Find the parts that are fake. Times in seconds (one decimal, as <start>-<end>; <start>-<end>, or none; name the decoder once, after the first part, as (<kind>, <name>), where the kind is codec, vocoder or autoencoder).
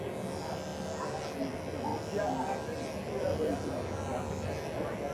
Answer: none